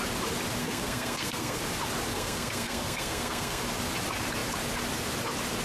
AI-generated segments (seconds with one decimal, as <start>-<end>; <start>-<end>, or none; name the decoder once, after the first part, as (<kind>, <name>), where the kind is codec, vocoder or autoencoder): 0.6-1.6 (codec, SNAC); 2.1-3.6